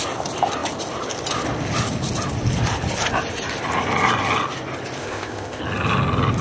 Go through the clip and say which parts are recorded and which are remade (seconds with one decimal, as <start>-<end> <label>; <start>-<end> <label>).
0.0-5.0 recorded; 5.0-5.6 remade; 5.6-6.4 recorded